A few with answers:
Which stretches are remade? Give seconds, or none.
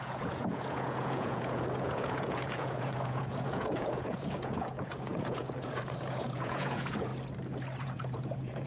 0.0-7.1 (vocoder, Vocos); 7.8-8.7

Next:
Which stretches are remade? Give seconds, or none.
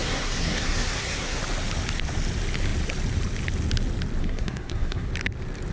0.0-1.4 (codec, SNAC); 4.2-5.1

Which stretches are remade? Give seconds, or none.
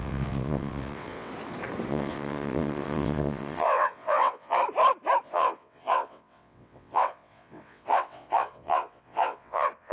0.0-1.3 (vocoder, WaveNeXt); 1.9-4.6; 5.2-9.9